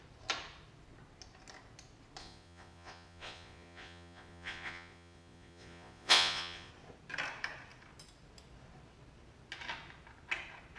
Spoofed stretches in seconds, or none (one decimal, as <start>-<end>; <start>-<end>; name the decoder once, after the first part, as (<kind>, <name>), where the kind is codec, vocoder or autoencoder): 2.2-6.7 (vocoder, Vocos)